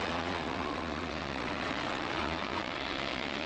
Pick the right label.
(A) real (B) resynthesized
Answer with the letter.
B